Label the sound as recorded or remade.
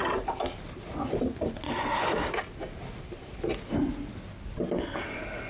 recorded